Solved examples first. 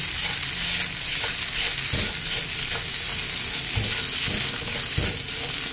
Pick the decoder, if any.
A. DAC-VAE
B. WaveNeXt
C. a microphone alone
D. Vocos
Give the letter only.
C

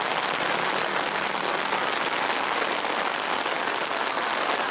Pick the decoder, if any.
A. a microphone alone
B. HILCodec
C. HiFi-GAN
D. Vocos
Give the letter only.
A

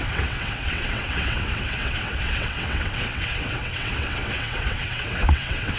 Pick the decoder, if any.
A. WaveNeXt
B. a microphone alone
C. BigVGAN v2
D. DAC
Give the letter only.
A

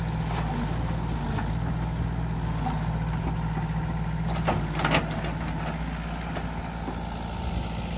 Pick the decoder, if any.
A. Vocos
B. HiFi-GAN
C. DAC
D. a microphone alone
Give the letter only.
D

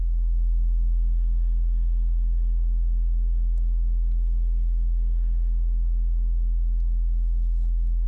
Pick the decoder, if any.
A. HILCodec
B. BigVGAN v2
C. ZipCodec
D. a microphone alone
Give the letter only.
D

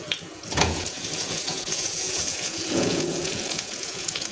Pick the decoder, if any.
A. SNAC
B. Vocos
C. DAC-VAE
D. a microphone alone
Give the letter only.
B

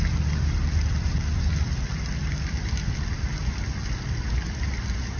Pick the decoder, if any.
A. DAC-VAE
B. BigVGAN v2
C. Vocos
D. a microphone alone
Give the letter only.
D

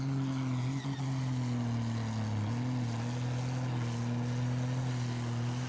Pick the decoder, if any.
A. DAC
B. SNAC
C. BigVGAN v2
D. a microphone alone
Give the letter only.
D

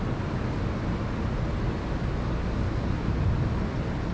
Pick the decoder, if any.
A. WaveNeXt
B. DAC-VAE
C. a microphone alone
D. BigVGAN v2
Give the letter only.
C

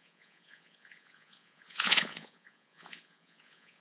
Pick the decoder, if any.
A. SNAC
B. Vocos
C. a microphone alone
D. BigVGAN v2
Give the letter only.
B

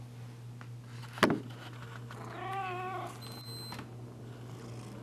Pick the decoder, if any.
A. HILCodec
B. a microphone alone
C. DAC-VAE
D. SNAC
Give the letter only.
B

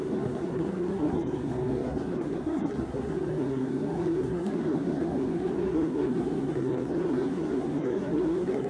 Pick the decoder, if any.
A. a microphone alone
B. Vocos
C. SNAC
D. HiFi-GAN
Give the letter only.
C